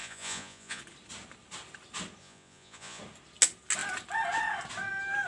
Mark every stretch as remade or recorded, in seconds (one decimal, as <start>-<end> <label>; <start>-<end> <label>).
0.0-0.8 remade; 0.8-2.2 recorded; 2.2-3.0 remade; 3.0-5.3 recorded